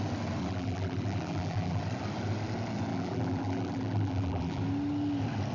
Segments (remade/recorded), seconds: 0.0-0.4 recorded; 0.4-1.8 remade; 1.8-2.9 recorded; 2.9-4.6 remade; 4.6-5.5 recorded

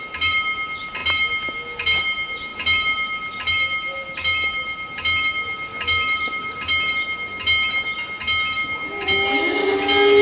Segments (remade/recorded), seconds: 0.0-5.7 recorded; 5.7-6.7 remade; 6.7-10.2 recorded

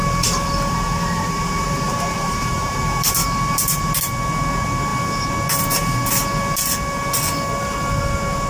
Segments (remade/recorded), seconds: 0.0-4.0 remade; 4.0-8.5 recorded

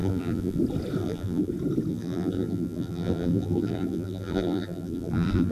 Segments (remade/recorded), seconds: 0.0-0.6 remade; 0.6-1.0 recorded; 1.0-1.5 remade; 1.5-1.9 recorded; 1.9-5.5 remade

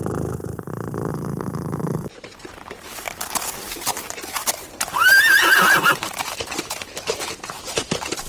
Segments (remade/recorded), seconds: 0.0-8.3 remade

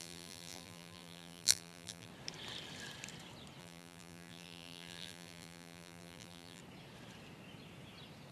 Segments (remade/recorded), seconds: 0.0-2.1 remade; 2.1-3.6 recorded; 3.6-6.6 remade; 6.6-8.3 recorded

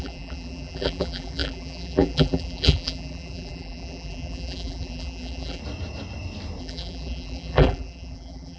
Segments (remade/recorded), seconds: 0.0-5.6 remade; 5.6-6.6 recorded; 6.6-8.6 remade